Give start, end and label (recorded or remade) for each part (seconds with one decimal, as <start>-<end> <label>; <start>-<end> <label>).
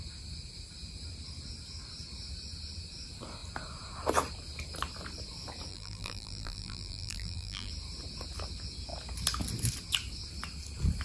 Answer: 0.0-5.7 recorded; 5.7-7.7 remade; 7.7-11.0 recorded